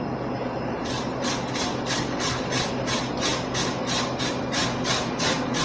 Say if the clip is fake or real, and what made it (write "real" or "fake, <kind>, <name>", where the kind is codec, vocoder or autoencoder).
real